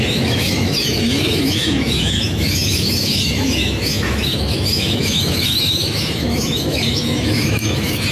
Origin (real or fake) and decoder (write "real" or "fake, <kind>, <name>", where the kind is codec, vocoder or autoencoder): fake, autoencoder, DAC-VAE